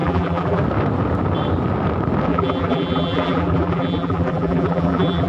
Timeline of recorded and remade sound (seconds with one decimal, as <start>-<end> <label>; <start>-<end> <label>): 0.0-0.6 remade; 0.6-2.3 recorded; 2.3-5.3 remade